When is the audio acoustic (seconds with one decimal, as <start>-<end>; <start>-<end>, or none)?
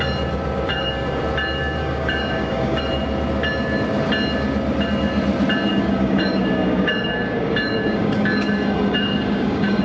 0.0-0.7; 1.2-1.8; 2.8-5.7